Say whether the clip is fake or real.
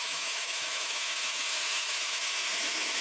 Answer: fake